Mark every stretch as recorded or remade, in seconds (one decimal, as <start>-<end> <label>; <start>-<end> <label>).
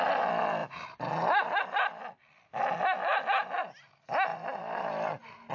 0.0-0.6 recorded; 0.6-1.6 remade; 1.6-4.3 recorded; 4.3-5.5 remade